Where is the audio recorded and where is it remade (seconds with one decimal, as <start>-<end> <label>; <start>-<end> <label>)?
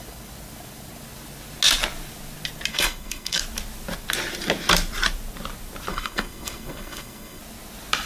0.0-2.7 recorded; 2.7-3.4 remade; 3.4-5.9 recorded; 5.9-7.4 remade; 7.4-8.1 recorded